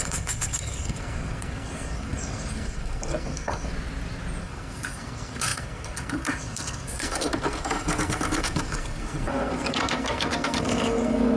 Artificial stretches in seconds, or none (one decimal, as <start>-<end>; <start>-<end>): 0.0-3.7; 4.4-11.4